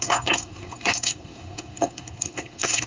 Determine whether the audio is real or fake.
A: fake